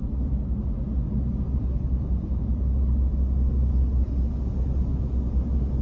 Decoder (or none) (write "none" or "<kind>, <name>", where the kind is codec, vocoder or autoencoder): none